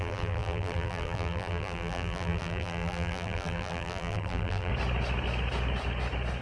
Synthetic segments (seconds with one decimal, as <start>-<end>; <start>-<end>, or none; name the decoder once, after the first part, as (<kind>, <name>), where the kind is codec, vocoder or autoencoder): 0.0-4.7 (vocoder, BigVGAN v2)